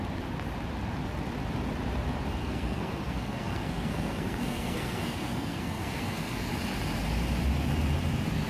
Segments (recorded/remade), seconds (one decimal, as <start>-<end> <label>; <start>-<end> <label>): 0.0-2.4 recorded; 2.4-6.5 remade; 6.5-8.5 recorded